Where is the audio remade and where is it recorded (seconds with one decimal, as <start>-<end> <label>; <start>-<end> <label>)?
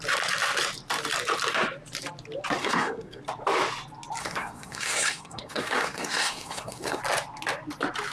0.0-2.6 recorded; 2.6-3.2 remade; 3.2-4.2 recorded; 4.2-7.0 remade; 7.0-8.1 recorded